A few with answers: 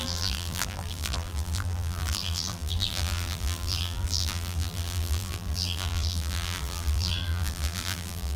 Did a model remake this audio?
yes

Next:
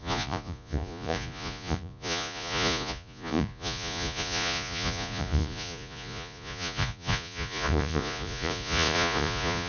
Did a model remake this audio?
yes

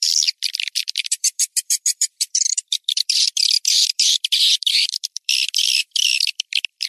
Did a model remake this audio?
yes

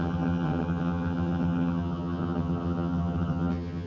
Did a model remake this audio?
yes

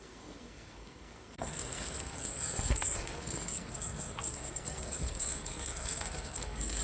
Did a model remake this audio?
yes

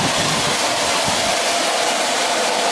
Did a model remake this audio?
no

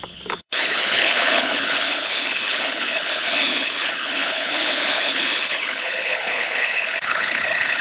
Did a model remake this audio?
yes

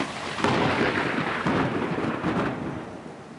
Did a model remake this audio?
no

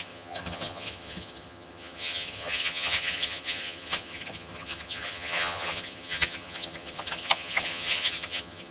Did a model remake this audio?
yes